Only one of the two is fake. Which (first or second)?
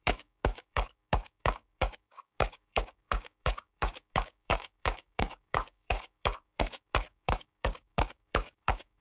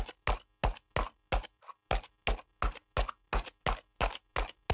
first